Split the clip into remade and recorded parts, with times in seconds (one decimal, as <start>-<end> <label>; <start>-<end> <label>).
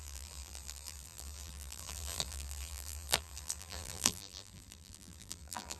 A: 0.0-5.8 remade